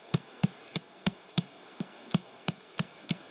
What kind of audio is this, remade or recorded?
remade